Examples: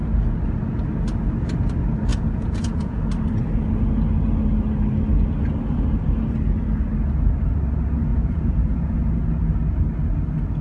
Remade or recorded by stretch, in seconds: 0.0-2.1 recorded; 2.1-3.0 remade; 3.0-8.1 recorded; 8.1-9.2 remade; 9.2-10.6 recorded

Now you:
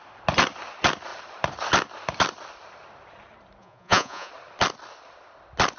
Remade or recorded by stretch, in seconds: 0.0-3.6 recorded; 3.6-4.3 remade; 4.3-5.8 recorded

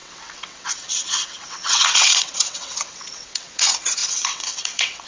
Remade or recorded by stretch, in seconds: 0.0-5.1 remade